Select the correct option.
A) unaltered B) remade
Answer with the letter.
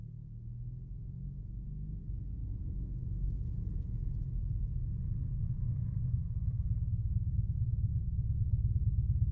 A